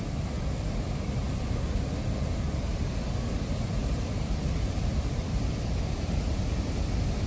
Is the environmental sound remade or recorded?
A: recorded